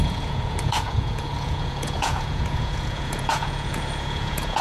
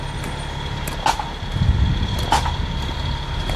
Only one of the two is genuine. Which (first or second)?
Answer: second